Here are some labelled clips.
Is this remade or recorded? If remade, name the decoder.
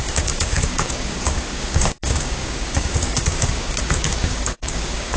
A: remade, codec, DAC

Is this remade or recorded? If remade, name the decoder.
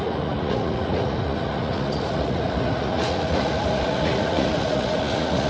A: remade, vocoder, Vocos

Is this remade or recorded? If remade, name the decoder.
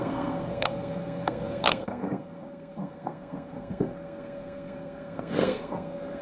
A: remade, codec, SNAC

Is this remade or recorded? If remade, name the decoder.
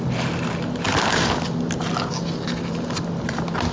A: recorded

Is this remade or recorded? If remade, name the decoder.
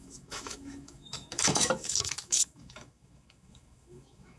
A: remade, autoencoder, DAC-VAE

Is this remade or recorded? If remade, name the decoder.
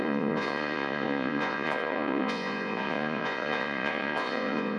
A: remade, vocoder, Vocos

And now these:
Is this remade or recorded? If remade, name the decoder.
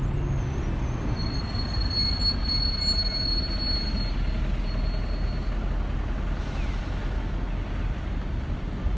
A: recorded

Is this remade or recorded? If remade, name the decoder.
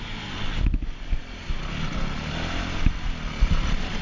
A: recorded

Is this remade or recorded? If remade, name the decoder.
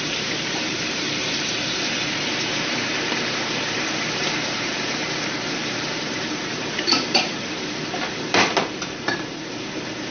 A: remade, vocoder, BigVGAN v2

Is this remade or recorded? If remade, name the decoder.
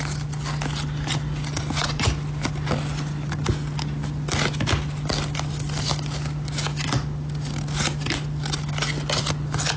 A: recorded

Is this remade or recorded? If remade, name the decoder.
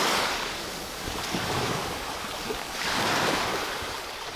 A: remade, codec, DAC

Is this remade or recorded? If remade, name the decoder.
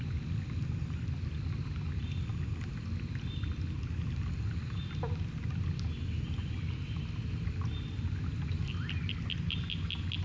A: recorded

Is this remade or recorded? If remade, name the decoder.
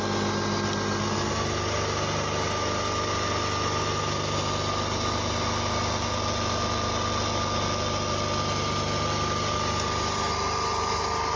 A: recorded